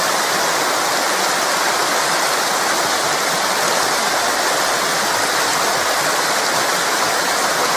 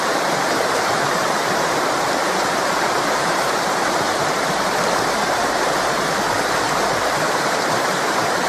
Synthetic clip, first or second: second